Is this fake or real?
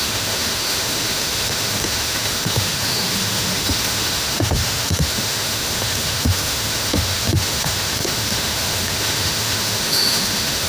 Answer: fake